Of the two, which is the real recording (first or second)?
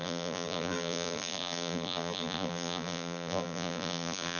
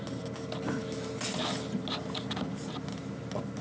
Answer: second